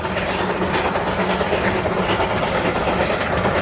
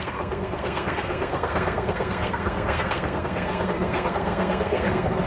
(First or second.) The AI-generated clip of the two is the second